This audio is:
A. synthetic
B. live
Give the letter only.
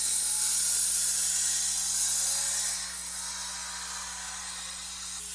B